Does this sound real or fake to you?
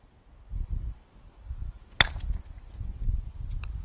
real